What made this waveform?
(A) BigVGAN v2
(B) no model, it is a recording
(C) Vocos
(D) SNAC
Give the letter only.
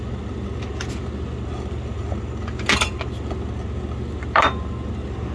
B